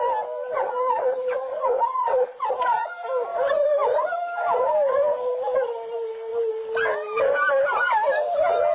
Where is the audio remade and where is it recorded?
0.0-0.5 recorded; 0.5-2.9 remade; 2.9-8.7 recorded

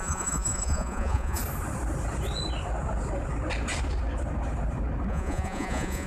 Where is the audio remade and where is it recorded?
0.0-1.4 remade; 1.4-5.1 recorded; 5.1-6.1 remade

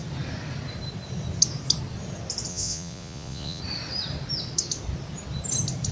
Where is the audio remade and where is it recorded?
0.0-2.5 recorded; 2.5-3.6 remade; 3.6-5.9 recorded

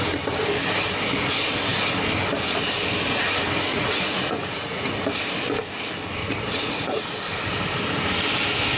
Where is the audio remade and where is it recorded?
0.0-3.7 recorded; 3.7-4.9 remade; 4.9-6.2 recorded; 6.2-7.0 remade; 7.0-8.8 recorded